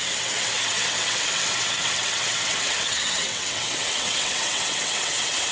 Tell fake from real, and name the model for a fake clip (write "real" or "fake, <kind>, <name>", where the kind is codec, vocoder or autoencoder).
fake, vocoder, WaveNeXt